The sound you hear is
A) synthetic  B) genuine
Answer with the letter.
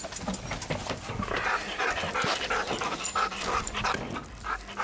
B